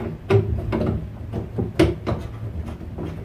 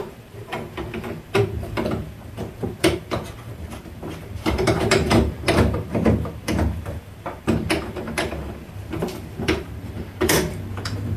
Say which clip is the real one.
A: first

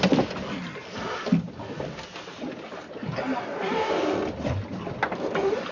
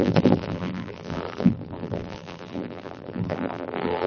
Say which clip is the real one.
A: first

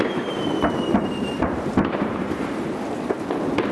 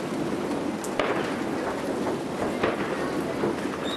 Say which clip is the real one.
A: second